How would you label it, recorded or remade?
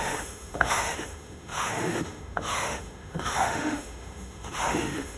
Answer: remade